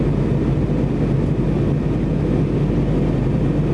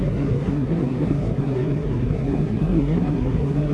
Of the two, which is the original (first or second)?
first